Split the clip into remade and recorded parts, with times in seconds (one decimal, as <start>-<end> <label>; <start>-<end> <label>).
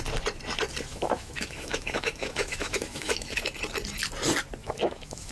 0.0-0.9 recorded; 0.9-3.5 remade; 3.5-4.6 recorded; 4.6-5.3 remade